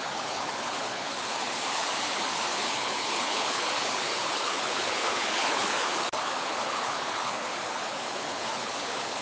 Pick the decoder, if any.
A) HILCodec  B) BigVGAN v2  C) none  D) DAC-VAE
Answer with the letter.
A